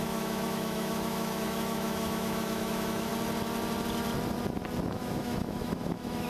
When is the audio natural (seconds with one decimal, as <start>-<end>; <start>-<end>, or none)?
3.1-4.9